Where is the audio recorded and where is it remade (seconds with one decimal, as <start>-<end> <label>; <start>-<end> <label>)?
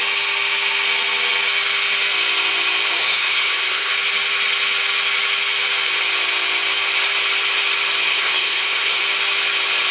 0.0-3.0 recorded; 3.0-3.9 remade; 3.9-8.1 recorded; 8.1-9.0 remade; 9.0-9.9 recorded